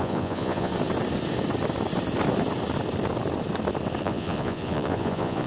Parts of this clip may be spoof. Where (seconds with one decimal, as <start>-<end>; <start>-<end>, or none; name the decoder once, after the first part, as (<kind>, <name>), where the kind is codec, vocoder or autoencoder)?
0.0-0.7 (vocoder, Vocos); 4.0-5.5